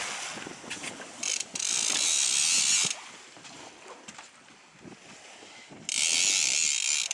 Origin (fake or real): real